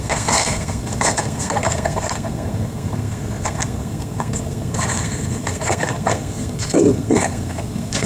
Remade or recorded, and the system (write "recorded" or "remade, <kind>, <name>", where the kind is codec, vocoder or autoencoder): remade, codec, SNAC